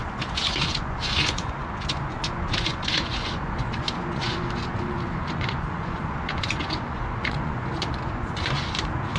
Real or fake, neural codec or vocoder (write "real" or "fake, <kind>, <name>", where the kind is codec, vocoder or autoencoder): fake, vocoder, Vocos